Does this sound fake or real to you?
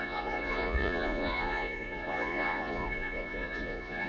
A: fake